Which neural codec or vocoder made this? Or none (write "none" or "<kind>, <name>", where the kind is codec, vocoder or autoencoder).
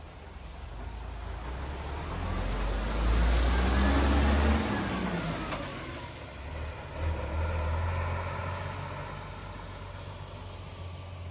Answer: none